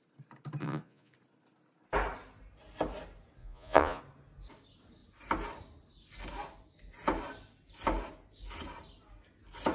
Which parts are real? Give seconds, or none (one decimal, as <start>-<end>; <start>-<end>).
0.0-0.6; 1.1-3.4; 4.0-9.7